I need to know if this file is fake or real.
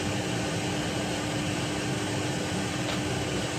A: real